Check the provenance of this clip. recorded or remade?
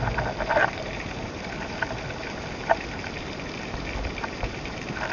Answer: remade